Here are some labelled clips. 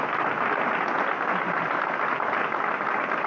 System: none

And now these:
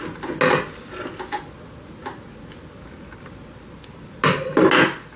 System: none